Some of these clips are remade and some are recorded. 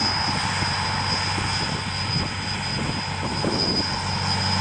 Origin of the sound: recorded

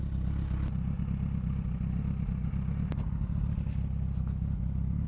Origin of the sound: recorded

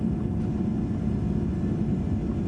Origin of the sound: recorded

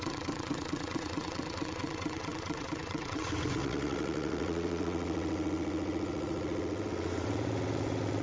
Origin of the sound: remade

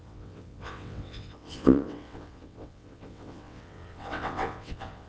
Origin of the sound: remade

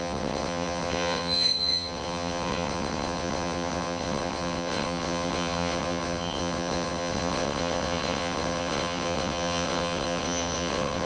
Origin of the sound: remade